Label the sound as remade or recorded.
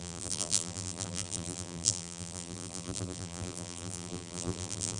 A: remade